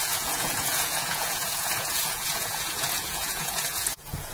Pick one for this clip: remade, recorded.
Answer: remade